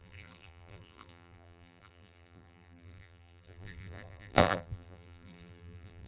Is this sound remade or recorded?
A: remade